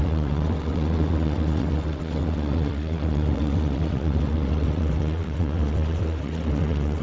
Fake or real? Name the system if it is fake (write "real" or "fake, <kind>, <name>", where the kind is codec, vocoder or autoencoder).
fake, vocoder, WaveNeXt